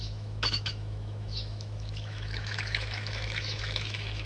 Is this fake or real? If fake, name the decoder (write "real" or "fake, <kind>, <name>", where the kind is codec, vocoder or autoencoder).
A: fake, autoencoder, DAC-VAE